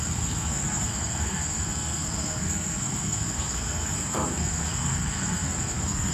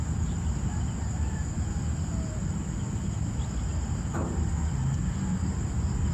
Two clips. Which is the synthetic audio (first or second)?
first